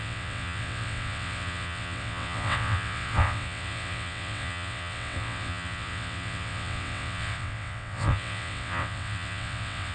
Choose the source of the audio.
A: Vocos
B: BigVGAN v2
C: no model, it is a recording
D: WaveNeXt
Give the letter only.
D